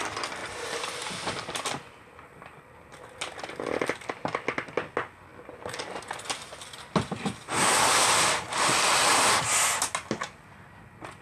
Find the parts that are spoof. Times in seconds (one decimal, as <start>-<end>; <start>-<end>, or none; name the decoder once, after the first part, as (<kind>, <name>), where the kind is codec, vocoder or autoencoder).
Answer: 0.4-2.4 (vocoder, BigVGAN v2)